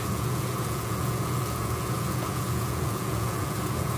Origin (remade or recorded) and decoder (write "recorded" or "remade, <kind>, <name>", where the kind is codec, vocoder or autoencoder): remade, vocoder, Vocos